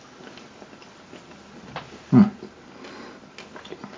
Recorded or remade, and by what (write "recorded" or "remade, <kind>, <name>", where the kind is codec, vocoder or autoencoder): recorded